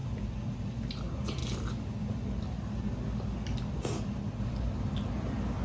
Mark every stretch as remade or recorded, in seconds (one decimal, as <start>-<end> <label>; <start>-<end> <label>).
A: 0.0-5.6 recorded